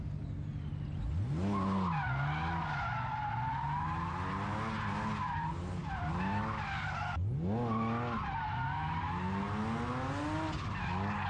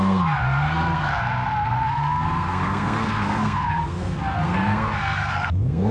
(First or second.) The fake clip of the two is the second